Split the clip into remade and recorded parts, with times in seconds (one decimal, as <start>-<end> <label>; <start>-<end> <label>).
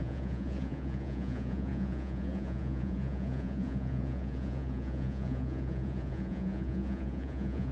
0.0-7.7 remade